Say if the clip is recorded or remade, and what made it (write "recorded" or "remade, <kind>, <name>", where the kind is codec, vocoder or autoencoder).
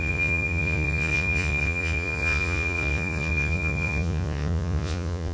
remade, vocoder, Vocos